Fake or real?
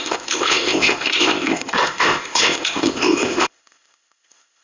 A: fake